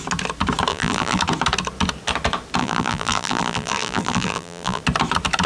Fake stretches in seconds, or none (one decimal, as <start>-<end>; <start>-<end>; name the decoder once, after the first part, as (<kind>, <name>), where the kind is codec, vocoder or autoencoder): 0.7-1.2 (vocoder, BigVGAN v2); 2.6-4.8